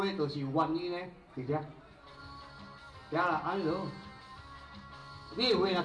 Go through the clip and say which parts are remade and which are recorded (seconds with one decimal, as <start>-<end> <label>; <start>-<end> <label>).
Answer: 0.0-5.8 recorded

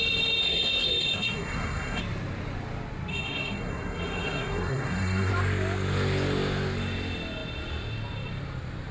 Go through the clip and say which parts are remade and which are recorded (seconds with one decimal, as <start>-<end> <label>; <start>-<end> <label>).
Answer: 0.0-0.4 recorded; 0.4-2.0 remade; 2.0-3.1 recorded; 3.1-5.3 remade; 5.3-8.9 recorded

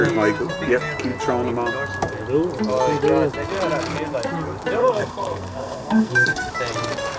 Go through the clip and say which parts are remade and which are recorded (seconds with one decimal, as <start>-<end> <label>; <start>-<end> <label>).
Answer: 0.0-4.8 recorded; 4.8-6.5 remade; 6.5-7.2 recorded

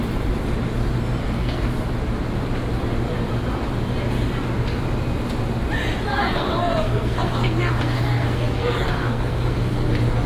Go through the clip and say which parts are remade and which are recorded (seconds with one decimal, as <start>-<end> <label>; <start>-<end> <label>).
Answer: 0.0-1.2 recorded; 1.2-1.7 remade; 1.7-6.1 recorded; 6.1-9.9 remade; 9.9-10.3 recorded

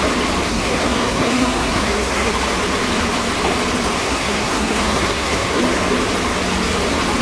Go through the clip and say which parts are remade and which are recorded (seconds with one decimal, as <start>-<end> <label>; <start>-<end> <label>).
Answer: 0.0-0.5 recorded; 0.5-2.3 remade; 2.3-4.0 recorded; 4.0-5.6 remade; 5.6-7.2 recorded

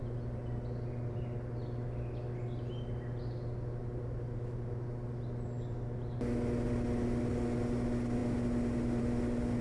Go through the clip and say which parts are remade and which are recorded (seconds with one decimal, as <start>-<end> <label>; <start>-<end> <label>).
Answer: 0.0-9.6 recorded